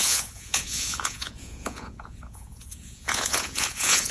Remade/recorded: remade